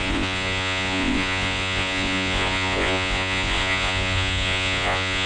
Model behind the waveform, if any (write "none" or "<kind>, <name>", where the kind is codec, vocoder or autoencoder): vocoder, Vocos